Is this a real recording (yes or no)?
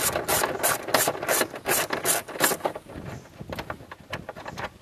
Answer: yes